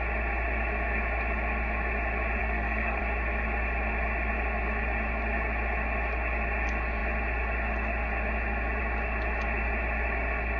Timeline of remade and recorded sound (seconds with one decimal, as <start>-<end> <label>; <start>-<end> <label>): 0.0-2.4 recorded; 2.4-3.0 remade; 3.0-10.6 recorded